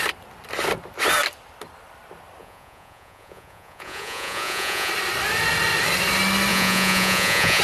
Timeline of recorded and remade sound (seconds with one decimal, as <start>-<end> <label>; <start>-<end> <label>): 0.0-2.4 recorded; 2.4-4.9 remade; 4.9-6.5 recorded; 6.5-7.6 remade